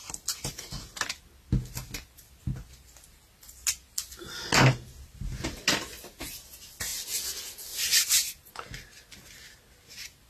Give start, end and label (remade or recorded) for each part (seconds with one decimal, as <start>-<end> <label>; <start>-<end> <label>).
0.0-10.3 recorded